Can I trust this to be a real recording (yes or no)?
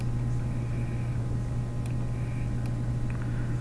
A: yes